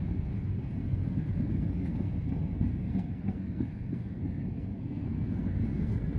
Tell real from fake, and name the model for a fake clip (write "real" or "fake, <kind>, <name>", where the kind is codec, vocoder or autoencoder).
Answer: fake, codec, SNAC